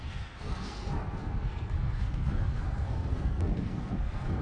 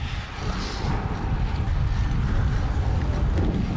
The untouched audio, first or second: second